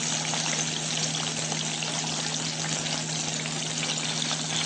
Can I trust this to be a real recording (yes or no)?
yes